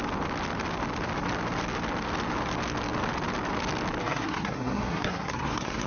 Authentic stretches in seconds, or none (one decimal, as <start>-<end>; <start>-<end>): 0.0-4.0